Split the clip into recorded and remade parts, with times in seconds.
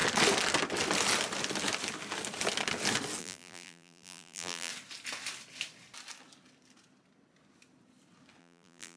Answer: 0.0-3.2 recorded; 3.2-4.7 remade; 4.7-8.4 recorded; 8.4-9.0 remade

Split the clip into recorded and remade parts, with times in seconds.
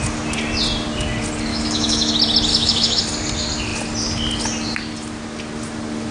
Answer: 0.0-1.5 recorded; 1.5-2.1 remade; 2.1-2.5 recorded; 2.5-3.0 remade; 3.0-6.1 recorded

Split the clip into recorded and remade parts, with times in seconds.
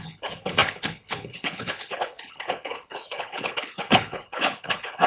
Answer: 0.0-5.1 remade